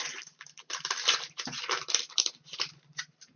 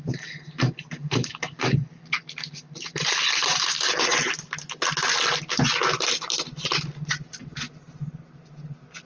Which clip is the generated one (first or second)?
first